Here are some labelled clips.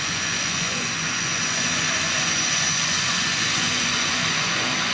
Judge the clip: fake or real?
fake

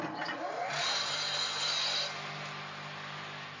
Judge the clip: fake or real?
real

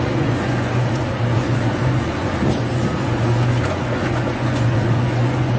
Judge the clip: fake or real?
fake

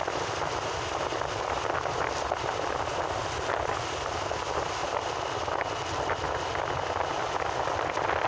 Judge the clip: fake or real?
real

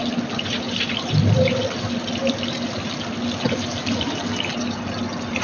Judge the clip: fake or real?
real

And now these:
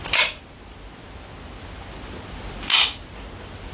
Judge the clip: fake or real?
real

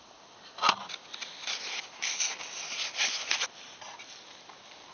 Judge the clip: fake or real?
real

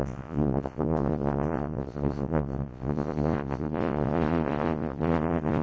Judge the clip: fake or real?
fake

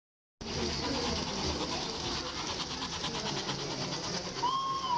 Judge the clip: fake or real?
real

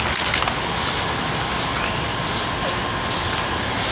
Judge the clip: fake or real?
real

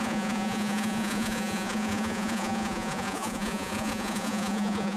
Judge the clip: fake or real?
fake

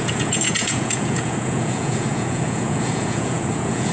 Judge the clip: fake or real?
fake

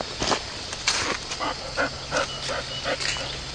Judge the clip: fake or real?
real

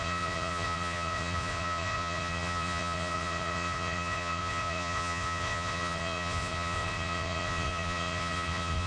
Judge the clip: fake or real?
fake